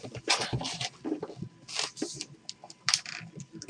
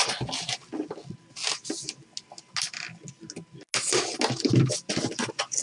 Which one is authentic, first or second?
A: second